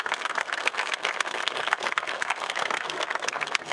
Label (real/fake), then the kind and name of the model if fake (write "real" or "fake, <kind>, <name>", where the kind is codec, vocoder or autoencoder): fake, codec, SNAC